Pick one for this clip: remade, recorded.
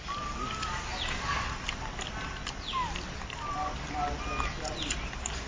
recorded